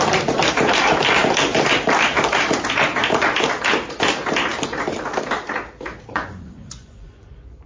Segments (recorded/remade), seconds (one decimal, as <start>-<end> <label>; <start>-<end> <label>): 0.0-6.1 recorded; 6.1-7.7 remade